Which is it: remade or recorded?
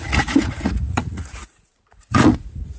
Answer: remade